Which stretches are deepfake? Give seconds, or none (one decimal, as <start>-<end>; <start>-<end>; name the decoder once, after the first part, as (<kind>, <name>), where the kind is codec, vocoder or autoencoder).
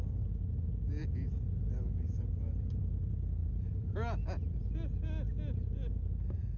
none